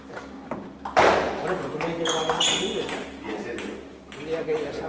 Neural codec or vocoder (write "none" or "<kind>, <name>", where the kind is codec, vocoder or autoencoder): none